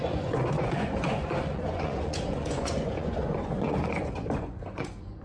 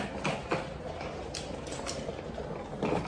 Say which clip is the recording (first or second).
second